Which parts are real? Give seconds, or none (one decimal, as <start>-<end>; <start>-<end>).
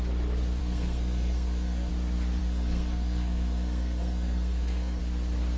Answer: 0.0-0.6; 1.9-2.4; 5.0-5.6